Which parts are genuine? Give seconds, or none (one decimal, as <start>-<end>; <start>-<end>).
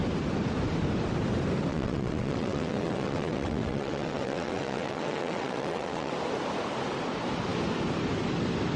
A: 0.0-1.7; 6.1-8.8